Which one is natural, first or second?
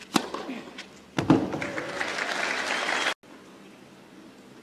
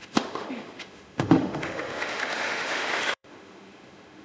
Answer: first